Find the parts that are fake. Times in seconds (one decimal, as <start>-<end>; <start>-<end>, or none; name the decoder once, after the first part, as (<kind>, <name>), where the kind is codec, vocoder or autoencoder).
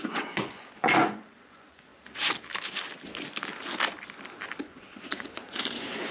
0.0-1.9 (vocoder, Vocos); 4.6-6.1